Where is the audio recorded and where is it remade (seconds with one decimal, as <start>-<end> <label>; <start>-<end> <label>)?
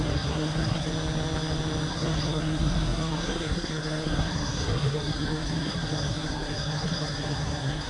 0.0-0.9 remade; 0.9-1.9 recorded; 1.9-7.9 remade